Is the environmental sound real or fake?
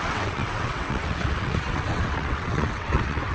fake